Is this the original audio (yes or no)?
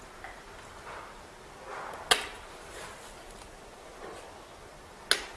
yes